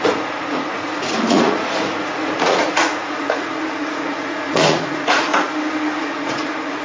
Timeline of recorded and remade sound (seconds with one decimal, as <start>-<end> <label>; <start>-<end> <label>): 0.0-5.3 remade; 5.3-6.0 recorded; 6.0-6.8 remade